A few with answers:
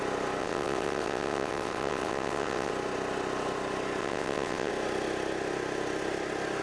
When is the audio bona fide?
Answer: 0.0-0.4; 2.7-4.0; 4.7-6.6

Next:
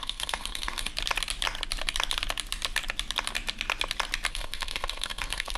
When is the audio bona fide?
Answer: 0.9-4.3

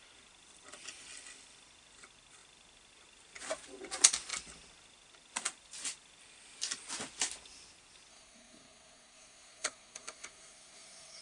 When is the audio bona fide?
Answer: 0.0-8.1

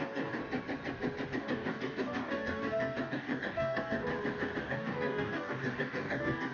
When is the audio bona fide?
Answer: 0.4-1.3; 4.1-4.6

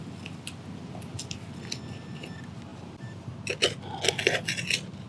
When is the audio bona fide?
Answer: 0.0-5.1